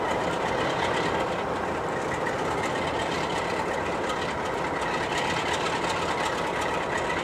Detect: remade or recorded remade